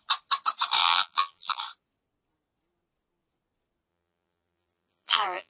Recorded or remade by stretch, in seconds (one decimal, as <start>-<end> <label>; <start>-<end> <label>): 0.0-0.8 recorded; 0.8-1.6 remade; 1.6-3.9 recorded; 3.9-5.5 remade